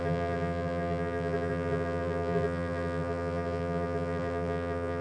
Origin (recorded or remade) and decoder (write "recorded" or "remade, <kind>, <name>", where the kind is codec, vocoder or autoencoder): remade, vocoder, BigVGAN v2